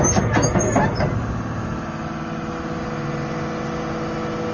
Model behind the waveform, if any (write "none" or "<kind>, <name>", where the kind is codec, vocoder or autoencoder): none